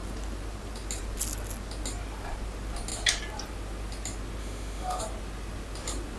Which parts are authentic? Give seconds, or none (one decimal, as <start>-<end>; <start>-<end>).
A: 0.0-4.4; 5.0-6.2

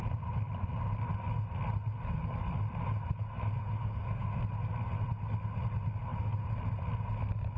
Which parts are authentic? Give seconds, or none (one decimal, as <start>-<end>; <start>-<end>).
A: 0.0-3.6; 4.4-7.6

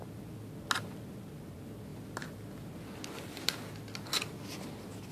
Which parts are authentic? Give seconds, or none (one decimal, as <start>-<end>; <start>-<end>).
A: 0.0-5.1

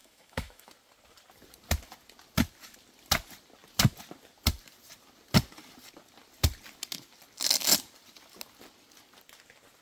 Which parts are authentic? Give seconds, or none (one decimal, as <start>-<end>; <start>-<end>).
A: 0.7-9.8

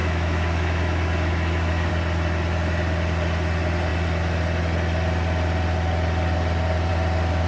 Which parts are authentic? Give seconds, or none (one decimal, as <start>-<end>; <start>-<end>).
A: 1.9-7.5

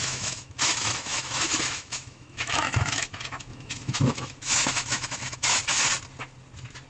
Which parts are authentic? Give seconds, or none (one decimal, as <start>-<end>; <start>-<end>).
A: 5.6-6.9

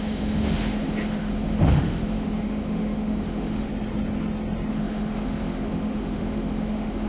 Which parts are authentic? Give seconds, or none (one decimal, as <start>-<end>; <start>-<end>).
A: 3.7-4.7